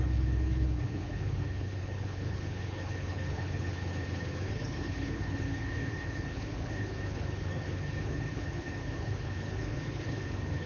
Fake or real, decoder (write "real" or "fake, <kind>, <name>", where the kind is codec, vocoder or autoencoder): fake, codec, HILCodec